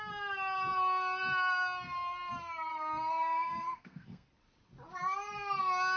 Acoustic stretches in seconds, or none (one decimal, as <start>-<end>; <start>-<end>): 0.0-2.7; 4.3-6.0